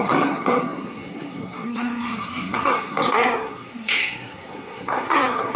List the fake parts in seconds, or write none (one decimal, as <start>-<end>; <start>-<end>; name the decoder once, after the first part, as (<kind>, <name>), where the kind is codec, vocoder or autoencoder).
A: 0.0-5.6 (codec, SNAC)